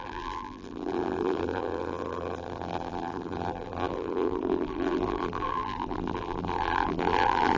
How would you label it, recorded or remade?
remade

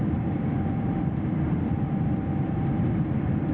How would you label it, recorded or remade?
remade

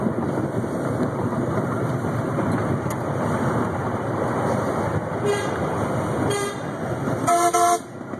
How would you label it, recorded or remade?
recorded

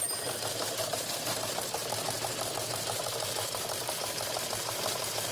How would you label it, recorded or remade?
remade